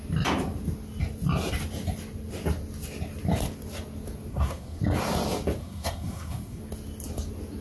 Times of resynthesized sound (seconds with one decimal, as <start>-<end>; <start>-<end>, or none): 4.3-4.8; 5.6-6.6